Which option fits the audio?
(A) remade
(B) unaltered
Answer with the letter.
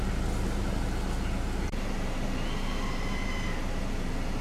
B